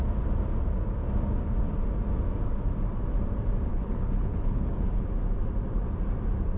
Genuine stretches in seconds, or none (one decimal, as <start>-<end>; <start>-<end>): 0.0-3.7; 4.9-6.6